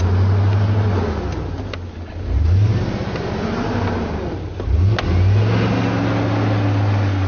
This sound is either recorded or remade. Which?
recorded